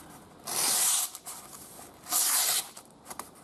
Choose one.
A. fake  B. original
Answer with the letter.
A